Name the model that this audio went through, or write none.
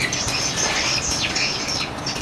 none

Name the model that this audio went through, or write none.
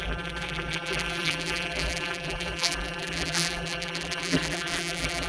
vocoder, BigVGAN v2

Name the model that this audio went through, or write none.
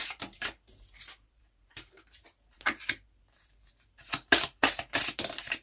vocoder, BigVGAN v2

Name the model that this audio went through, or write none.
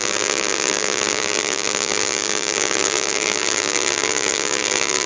vocoder, BigVGAN v2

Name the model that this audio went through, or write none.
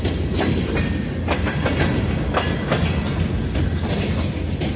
none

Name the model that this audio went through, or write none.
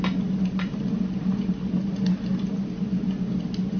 none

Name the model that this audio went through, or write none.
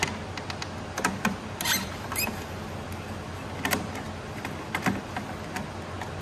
none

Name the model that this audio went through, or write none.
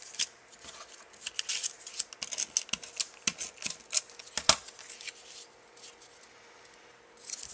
none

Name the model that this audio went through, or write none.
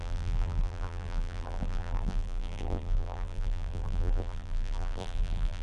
vocoder, BigVGAN v2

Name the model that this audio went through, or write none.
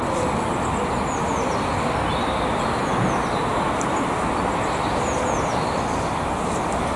none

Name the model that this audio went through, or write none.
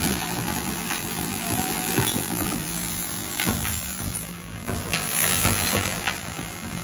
vocoder, BigVGAN v2